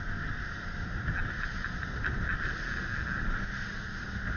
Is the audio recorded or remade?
recorded